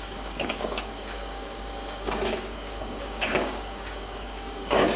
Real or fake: fake